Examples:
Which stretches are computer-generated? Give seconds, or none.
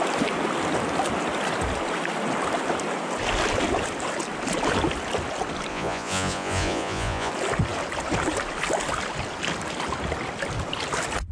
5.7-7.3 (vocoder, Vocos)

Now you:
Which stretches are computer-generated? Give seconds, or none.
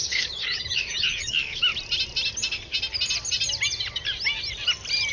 0.0-1.7 (autoencoder, DAC-VAE)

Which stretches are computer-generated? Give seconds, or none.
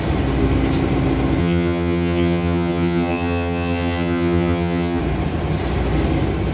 1.4-5.0 (vocoder, HiFi-GAN)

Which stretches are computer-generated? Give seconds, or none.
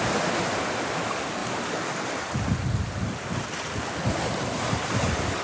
none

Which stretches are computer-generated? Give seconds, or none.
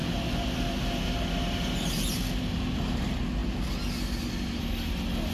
none